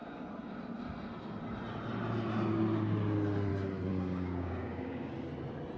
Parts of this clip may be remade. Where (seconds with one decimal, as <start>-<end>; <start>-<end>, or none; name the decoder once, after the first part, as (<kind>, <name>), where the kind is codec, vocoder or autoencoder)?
3.9-5.1 (codec, DAC)